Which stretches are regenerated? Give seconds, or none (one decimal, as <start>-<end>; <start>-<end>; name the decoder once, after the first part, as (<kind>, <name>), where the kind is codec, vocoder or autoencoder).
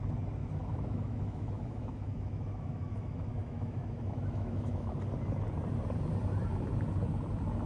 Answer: 0.4-5.0 (autoencoder, DAC-VAE)